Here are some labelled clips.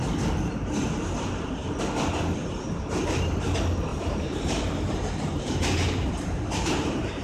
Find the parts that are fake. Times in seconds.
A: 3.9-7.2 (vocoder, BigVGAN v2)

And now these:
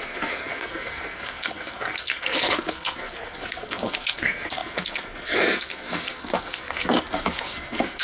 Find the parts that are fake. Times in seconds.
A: 0.0-8.0 (codec, SNAC)

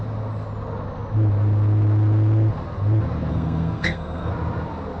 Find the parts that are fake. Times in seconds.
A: 3.3-4.3 (codec, SNAC)

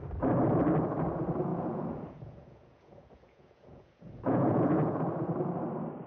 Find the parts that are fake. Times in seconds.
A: 1.5-5.0 (vocoder, Vocos)

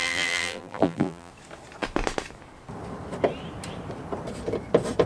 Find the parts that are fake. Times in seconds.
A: 0.0-1.3 (vocoder, BigVGAN v2)

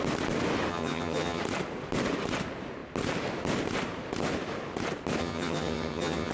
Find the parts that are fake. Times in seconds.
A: 0.7-1.4 (vocoder, HiFi-GAN); 5.2-6.3